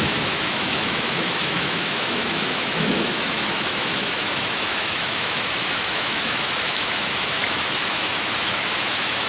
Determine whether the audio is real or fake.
fake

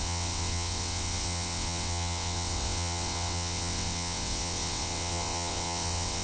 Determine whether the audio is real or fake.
fake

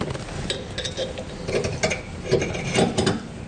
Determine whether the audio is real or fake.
real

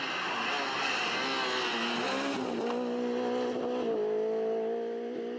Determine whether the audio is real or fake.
real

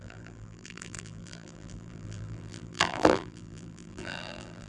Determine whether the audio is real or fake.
fake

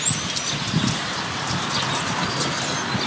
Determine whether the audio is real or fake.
real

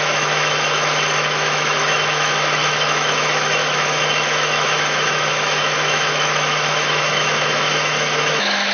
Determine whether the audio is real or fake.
fake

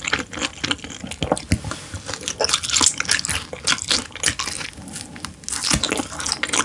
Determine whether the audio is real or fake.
real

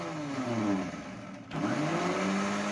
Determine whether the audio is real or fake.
real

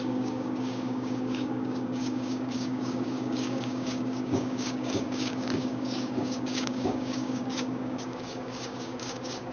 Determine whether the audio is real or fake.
fake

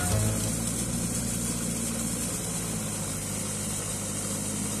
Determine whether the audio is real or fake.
real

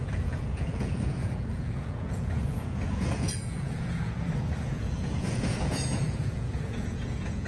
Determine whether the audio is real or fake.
fake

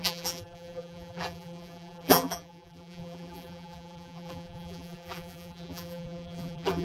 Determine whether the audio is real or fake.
fake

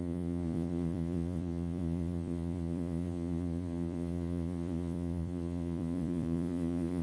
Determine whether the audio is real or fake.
fake